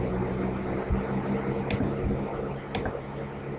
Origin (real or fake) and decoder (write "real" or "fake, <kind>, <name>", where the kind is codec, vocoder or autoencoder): real